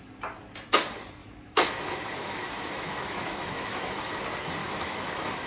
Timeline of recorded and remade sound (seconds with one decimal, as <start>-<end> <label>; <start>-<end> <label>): 0.0-1.2 recorded; 1.2-4.1 remade; 4.1-4.6 recorded; 4.6-5.5 remade